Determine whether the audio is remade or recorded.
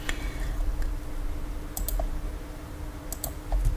recorded